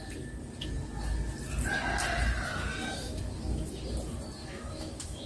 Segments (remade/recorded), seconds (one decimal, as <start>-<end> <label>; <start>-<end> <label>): 0.0-2.7 recorded; 2.7-3.7 remade; 3.7-4.4 recorded; 4.4-5.3 remade